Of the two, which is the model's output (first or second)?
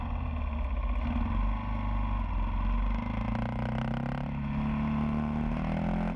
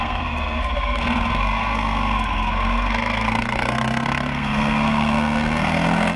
second